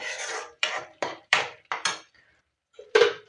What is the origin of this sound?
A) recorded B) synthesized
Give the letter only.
B